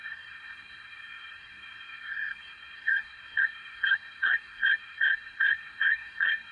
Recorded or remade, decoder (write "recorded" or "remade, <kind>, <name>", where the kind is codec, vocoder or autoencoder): remade, codec, SNAC